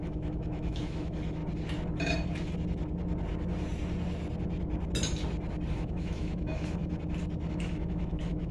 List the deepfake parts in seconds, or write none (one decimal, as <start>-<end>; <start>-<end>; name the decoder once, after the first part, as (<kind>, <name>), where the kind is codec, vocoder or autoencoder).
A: 0.0-1.4 (autoencoder, DAC-VAE); 5.7-6.8; 7.5-8.5